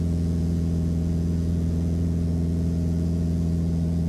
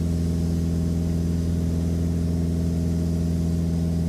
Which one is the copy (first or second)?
first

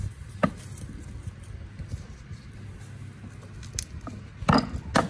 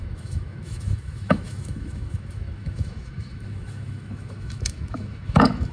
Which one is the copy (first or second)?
second